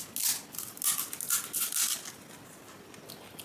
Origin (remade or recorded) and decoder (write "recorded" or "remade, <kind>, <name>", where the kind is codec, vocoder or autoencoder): recorded